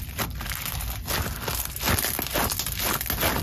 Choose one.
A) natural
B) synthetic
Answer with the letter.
A